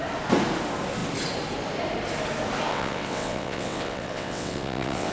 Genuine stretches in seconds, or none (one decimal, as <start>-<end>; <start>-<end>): 0.0-2.7